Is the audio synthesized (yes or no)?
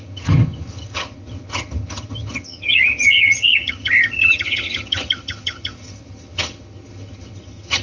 yes